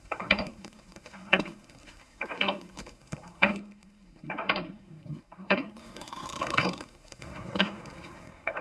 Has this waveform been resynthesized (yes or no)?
yes